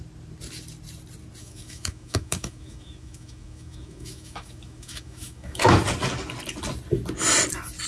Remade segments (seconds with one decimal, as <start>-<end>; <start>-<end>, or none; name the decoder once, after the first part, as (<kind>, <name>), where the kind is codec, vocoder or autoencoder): 1.4-5.7 (autoencoder, DAC-VAE)